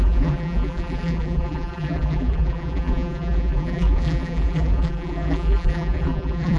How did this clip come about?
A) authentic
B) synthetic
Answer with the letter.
B